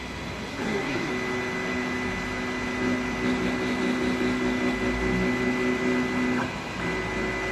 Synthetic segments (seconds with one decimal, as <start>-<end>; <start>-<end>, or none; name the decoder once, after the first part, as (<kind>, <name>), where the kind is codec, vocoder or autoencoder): 0.5-1.1 (codec, SNAC)